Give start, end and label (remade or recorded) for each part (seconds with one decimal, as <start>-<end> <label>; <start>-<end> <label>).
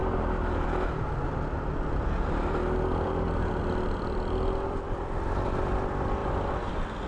0.0-3.6 recorded; 3.6-7.1 remade